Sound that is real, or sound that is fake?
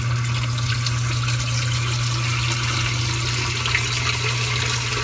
real